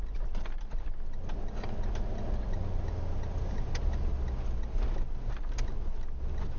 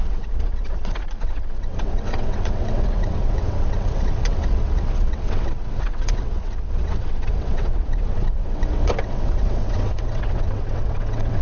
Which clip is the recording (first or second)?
first